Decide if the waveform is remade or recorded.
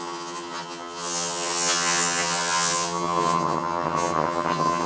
remade